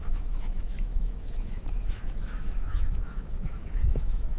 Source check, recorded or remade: remade